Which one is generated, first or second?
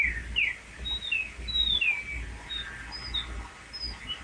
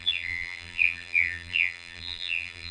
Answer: second